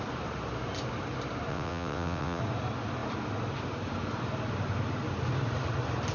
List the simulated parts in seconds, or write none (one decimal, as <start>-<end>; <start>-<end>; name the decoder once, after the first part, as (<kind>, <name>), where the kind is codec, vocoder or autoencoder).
1.5-2.4 (vocoder, WaveNeXt)